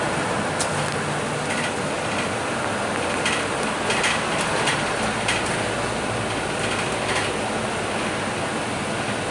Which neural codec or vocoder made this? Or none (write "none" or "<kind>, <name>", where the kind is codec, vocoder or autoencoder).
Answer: none